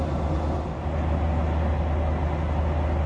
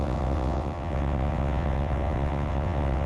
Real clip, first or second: first